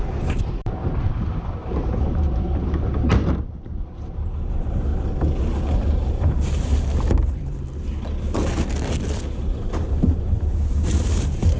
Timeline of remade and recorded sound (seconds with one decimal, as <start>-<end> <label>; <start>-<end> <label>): 0.0-4.9 remade; 4.9-5.6 recorded; 5.6-6.7 remade; 6.7-9.3 recorded; 9.3-11.6 remade